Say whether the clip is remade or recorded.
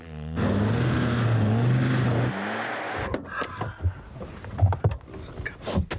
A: recorded